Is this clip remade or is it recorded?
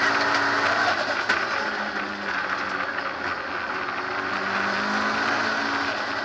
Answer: recorded